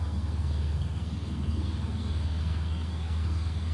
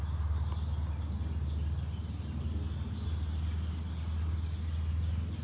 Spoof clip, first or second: first